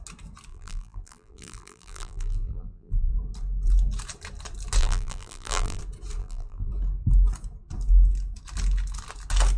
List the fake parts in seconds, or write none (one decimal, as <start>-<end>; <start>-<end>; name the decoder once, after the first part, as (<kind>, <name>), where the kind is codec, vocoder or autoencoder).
0.5-3.1 (vocoder, BigVGAN v2); 4.8-5.8; 6.2-6.7